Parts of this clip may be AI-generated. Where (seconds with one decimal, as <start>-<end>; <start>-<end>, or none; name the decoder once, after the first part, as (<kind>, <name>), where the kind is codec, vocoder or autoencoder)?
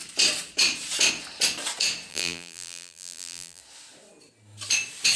2.1-3.6 (vocoder, BigVGAN v2)